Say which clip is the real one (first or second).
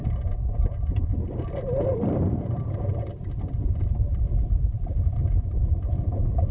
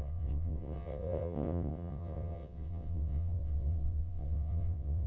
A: first